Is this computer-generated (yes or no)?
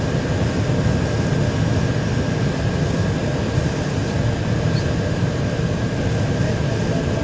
no